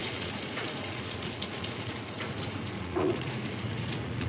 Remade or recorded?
remade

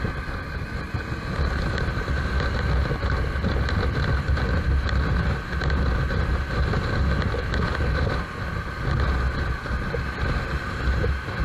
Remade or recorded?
recorded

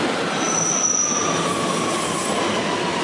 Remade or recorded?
recorded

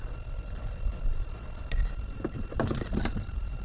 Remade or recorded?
recorded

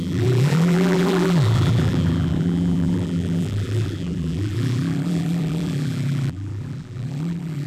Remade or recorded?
remade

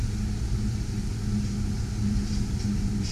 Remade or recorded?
recorded